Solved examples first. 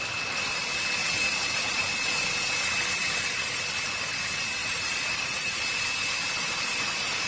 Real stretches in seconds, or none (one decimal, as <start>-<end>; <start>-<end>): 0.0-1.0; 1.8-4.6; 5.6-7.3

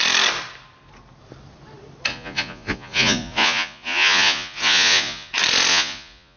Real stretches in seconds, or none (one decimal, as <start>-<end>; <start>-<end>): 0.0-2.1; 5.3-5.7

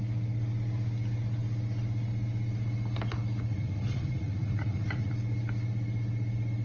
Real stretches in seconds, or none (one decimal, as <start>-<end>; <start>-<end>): 0.0-3.5; 5.1-6.6

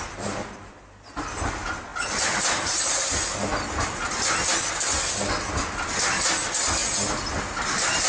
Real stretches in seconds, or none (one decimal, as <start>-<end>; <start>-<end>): 0.0-8.1